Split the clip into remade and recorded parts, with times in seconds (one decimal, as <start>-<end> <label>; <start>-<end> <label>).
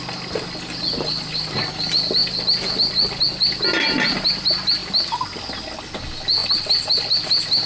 0.0-7.7 recorded